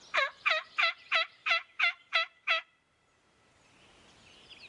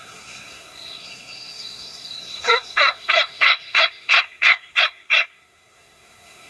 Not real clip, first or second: second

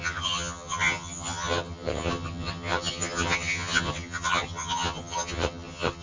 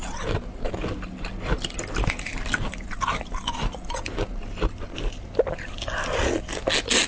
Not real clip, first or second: first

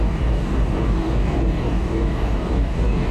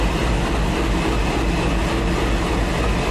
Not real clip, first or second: first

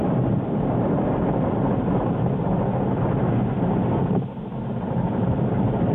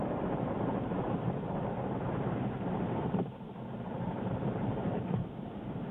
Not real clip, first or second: second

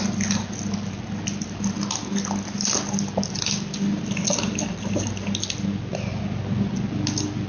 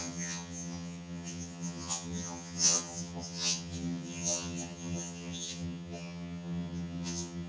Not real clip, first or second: second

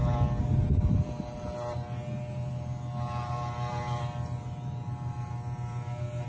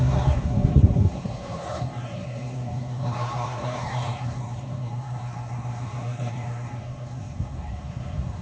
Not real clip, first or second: second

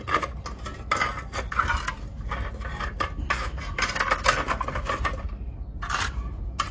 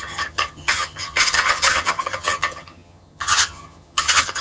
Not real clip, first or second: second